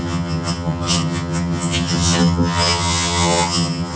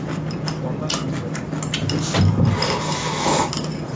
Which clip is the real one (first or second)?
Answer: second